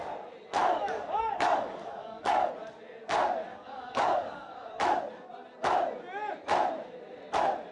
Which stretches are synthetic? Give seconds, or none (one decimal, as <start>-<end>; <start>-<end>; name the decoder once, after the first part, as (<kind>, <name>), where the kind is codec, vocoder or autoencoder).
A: 0.6-2.5 (codec, DAC); 3.5-4.8